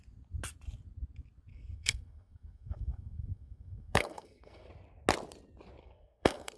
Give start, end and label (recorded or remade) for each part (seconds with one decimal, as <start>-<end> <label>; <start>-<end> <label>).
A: 0.0-1.5 recorded; 1.5-4.7 remade; 4.7-5.8 recorded; 5.8-6.6 remade